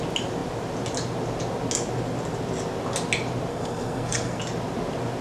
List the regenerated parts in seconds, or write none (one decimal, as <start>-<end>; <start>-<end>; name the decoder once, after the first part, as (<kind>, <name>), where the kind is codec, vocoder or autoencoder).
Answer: 3.5-4.4 (codec, SNAC)

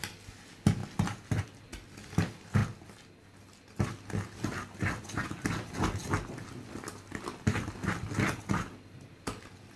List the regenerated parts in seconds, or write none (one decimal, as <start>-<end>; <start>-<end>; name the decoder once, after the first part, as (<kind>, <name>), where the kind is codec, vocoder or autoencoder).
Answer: none

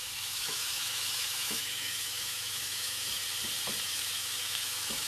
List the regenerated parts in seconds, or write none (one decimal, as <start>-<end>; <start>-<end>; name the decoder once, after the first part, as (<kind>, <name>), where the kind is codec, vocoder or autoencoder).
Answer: 0.0-3.2 (autoencoder, DAC-VAE); 3.8-5.1